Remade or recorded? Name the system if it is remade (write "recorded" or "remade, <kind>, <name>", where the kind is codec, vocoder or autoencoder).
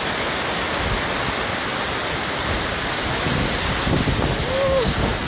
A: recorded